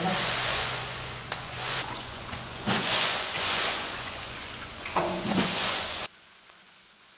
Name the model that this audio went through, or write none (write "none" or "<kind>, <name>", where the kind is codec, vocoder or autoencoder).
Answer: vocoder, Vocos